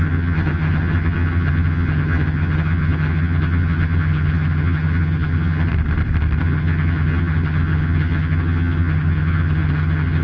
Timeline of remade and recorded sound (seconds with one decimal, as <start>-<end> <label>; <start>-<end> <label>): 0.0-5.7 remade; 5.7-6.4 recorded; 6.4-10.2 remade